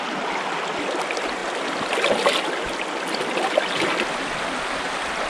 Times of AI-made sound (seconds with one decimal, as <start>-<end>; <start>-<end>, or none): none